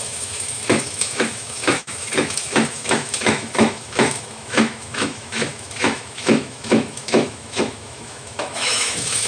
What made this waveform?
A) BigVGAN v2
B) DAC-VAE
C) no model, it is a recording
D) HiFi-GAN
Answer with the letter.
B